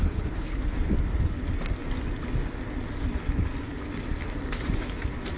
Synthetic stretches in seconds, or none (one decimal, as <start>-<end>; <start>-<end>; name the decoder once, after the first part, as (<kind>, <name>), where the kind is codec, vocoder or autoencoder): 0.0-0.6 (codec, HILCodec)